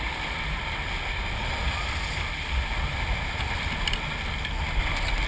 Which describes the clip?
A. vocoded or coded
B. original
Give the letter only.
B